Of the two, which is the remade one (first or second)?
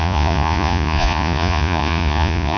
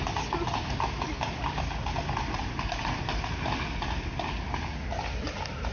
first